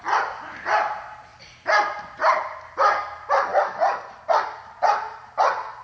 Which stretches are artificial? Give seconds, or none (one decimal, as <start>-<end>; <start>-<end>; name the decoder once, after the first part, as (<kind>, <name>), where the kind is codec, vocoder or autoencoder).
none